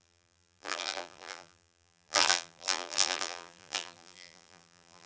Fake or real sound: fake